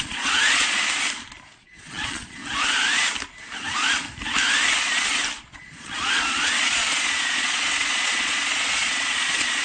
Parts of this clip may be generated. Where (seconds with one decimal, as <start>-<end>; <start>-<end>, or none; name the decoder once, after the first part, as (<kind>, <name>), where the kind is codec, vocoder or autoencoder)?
0.0-0.8 (vocoder, Vocos); 1.6-2.4; 5.4-9.6